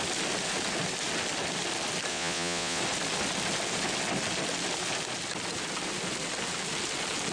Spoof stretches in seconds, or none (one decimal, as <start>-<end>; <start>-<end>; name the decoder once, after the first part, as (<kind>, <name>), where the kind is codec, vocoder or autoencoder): 2.1-2.8 (vocoder, Vocos)